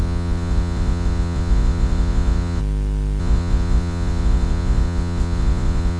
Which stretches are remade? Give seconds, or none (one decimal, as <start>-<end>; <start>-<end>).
0.0-2.6; 3.2-6.0